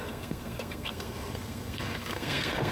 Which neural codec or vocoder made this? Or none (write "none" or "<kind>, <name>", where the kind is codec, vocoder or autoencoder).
codec, SNAC